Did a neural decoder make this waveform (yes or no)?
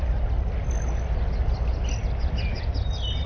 no